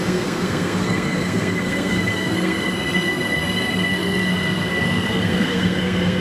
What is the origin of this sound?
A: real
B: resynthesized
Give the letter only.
B